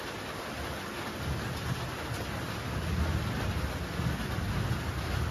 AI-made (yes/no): no